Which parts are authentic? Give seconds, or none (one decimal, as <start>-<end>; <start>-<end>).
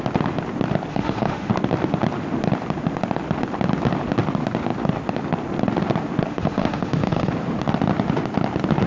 0.0-0.9; 1.5-6.3; 7.3-8.9